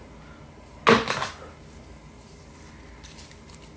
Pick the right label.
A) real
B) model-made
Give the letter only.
A